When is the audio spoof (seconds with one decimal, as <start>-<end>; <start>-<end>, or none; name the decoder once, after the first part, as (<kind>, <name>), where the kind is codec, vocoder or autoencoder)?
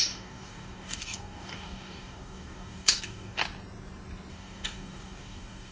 0.0-3.4 (codec, DAC); 4.3-5.7